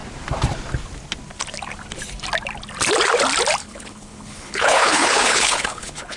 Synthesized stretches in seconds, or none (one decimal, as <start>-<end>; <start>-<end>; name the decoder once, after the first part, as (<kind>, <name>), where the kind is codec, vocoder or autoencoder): 3.6-6.2 (codec, HILCodec)